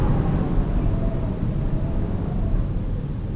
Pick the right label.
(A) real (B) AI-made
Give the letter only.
A